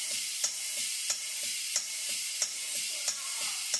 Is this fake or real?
fake